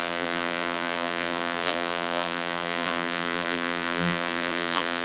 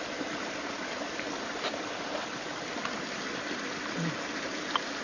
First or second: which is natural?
second